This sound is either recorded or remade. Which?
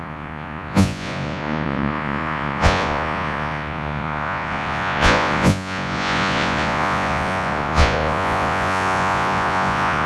remade